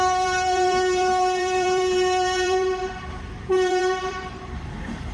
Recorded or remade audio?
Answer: remade